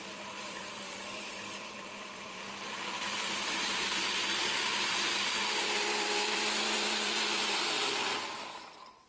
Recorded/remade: remade